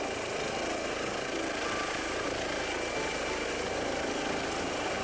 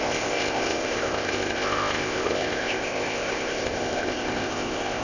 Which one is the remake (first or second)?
second